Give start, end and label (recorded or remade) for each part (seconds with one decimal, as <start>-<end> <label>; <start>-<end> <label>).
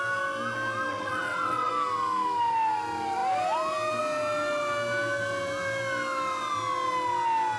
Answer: 0.0-0.9 recorded; 0.9-1.7 remade; 1.7-7.6 recorded